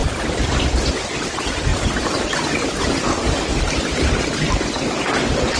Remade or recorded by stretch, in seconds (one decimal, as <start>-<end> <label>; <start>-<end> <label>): 0.0-5.6 recorded